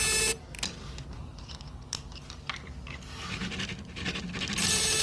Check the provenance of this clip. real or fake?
real